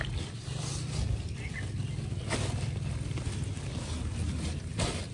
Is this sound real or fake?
real